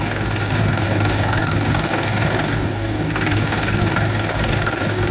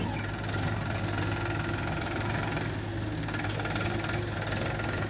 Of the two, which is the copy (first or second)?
first